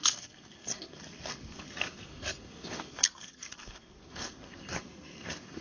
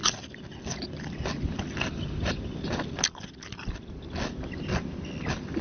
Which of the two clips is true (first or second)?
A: second